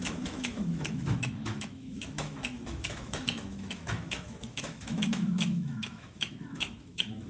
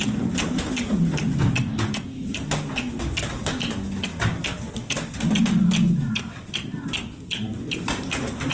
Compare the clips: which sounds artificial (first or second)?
first